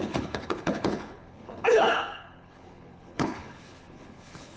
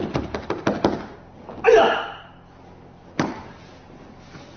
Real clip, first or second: second